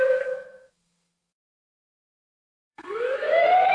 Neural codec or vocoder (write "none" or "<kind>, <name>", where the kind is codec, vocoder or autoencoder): codec, SNAC